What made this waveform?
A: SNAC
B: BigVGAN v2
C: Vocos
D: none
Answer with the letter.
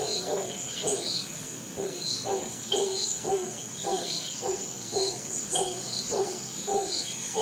A